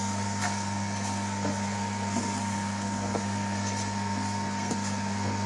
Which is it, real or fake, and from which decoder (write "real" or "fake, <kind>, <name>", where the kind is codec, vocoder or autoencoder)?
fake, codec, SNAC